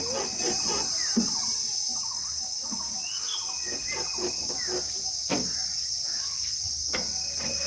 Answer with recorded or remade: recorded